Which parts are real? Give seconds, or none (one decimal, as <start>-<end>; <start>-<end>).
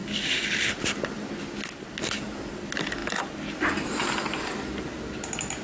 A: 0.0-5.6